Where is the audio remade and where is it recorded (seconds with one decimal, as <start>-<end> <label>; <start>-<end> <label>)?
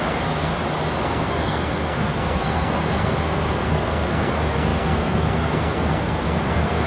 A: 0.0-0.5 remade; 0.5-1.0 recorded; 1.0-6.9 remade